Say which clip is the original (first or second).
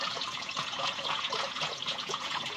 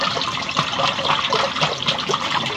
second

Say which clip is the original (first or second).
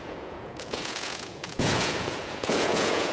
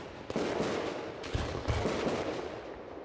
second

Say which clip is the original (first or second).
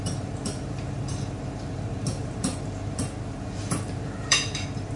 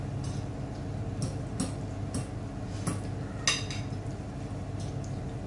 second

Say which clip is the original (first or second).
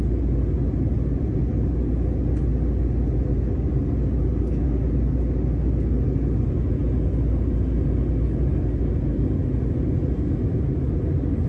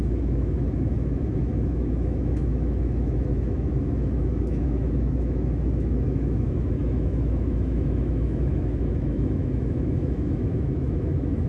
first